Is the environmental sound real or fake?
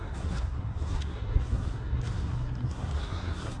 fake